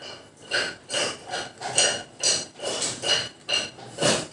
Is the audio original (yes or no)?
yes